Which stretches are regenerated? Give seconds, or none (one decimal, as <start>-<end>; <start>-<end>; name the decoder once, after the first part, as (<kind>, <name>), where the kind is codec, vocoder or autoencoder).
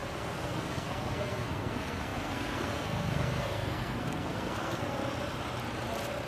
0.0-5.0 (codec, SNAC)